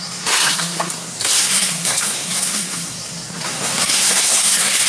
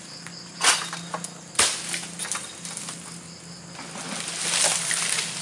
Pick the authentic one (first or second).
second